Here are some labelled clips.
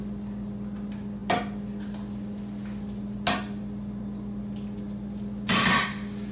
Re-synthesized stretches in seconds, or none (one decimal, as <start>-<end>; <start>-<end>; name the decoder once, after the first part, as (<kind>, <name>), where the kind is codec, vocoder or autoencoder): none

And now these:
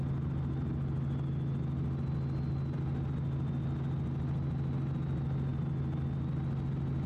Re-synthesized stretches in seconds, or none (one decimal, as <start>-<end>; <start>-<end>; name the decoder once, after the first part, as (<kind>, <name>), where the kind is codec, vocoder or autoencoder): none

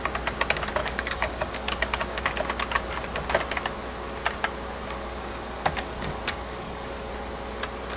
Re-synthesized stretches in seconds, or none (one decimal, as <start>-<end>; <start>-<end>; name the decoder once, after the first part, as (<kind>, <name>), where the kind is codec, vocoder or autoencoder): 0.8-2.3 (codec, DAC); 4.8-7.1

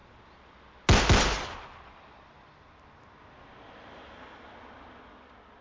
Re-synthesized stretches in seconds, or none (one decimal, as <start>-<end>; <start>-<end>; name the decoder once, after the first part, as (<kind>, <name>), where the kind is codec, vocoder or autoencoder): none